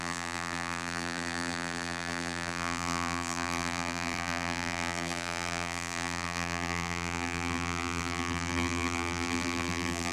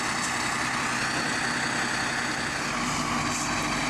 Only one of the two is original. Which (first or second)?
second